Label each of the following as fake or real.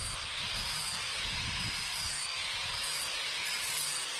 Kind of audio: real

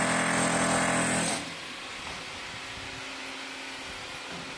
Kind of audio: real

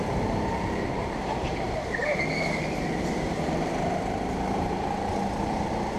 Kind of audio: fake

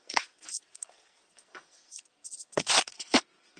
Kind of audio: fake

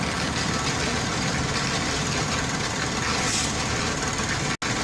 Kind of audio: real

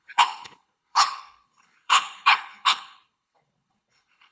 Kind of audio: fake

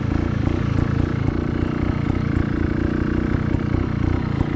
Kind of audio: real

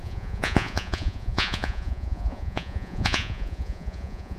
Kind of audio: fake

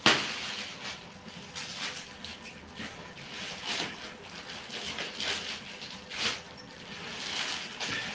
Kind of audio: real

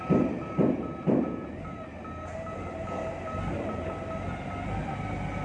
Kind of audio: real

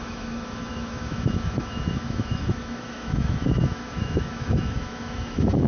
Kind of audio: fake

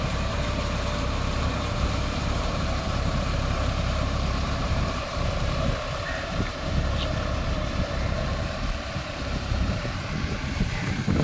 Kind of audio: fake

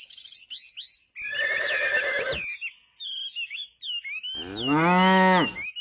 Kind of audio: real